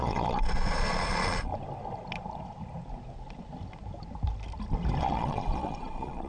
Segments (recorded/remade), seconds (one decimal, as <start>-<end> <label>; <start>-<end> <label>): 0.0-1.5 remade; 1.5-5.0 recorded; 5.0-6.3 remade